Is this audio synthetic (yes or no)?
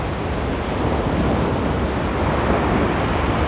no